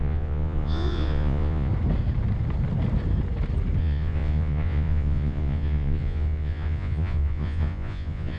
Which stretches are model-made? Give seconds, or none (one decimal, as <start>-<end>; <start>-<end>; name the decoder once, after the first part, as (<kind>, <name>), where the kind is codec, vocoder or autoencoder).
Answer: 0.0-1.7 (vocoder, Vocos); 3.8-8.4